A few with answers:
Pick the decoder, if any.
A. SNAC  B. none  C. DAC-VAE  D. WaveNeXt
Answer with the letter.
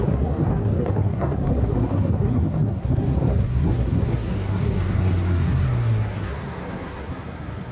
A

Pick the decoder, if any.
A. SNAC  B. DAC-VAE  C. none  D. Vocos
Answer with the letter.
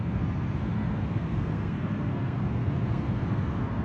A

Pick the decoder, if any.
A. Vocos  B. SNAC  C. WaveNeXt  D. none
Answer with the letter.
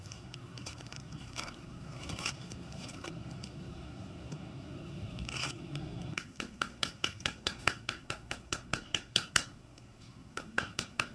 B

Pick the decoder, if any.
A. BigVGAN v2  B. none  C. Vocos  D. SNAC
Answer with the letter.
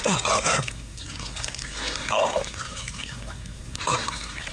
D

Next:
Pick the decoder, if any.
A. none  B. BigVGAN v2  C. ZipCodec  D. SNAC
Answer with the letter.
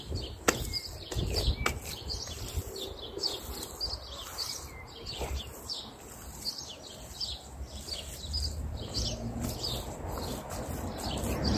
A